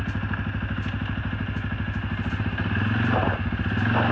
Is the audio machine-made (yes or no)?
no